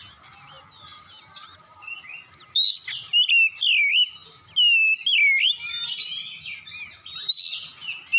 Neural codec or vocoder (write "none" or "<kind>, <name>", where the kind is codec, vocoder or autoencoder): none